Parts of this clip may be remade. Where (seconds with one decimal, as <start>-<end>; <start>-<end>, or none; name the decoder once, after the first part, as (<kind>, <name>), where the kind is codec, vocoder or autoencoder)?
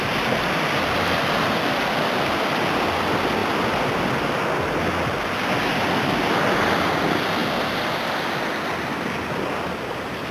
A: none